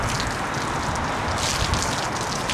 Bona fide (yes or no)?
yes